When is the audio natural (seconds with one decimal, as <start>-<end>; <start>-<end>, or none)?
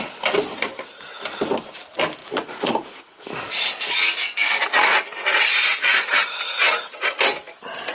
0.0-2.2; 3.5-7.9